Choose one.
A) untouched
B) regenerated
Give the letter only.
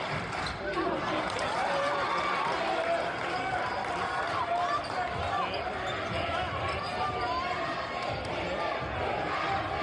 A